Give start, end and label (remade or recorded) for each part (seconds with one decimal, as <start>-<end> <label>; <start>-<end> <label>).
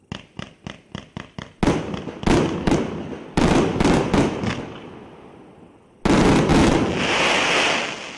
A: 0.0-8.2 recorded